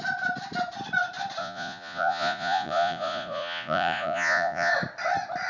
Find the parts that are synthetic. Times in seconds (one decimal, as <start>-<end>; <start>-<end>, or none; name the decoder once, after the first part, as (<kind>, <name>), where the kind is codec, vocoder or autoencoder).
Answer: 1.4-4.7 (vocoder, Vocos)